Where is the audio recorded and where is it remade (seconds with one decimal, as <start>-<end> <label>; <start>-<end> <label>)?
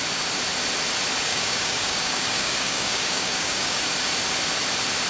0.0-1.3 recorded; 1.3-3.8 remade; 3.8-5.1 recorded